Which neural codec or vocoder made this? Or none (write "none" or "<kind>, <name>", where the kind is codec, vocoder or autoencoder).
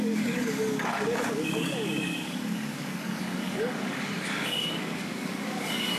codec, DAC